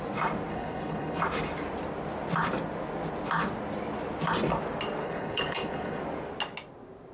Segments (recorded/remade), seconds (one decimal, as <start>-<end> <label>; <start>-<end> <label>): 0.0-0.5 recorded; 0.5-1.2 remade; 1.2-5.0 recorded; 5.0-6.0 remade; 6.0-7.1 recorded